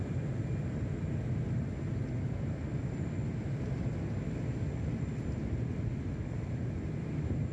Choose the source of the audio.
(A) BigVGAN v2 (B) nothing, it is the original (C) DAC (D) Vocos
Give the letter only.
B